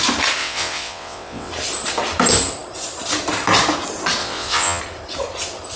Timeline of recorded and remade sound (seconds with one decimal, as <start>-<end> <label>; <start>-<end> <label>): 0.0-0.4 recorded; 0.4-1.5 remade; 1.5-4.2 recorded; 4.2-4.8 remade; 4.8-5.8 recorded